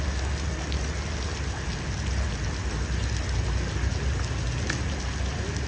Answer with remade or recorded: recorded